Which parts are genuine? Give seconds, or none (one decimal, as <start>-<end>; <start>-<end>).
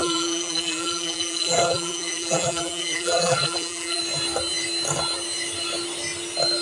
4.0-6.6